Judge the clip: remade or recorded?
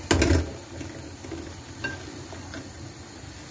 recorded